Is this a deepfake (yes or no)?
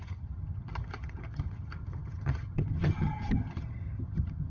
yes